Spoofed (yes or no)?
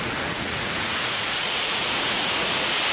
yes